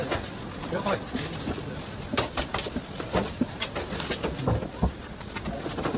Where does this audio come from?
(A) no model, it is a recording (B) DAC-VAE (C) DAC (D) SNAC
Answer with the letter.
A